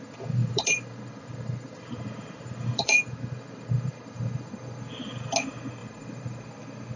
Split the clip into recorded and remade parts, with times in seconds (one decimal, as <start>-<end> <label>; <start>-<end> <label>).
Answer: 0.0-0.4 recorded; 0.4-4.6 remade; 4.6-5.8 recorded; 5.8-6.4 remade; 6.4-7.0 recorded